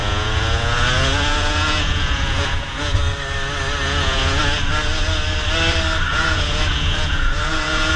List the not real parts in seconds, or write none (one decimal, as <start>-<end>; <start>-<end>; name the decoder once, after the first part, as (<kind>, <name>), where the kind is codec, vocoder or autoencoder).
0.0-3.0 (vocoder, Vocos); 3.8-4.4; 6.1-8.0